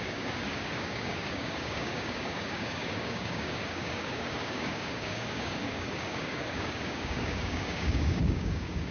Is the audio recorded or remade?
remade